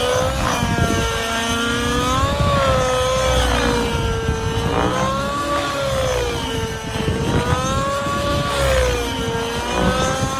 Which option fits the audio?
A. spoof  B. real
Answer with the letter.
B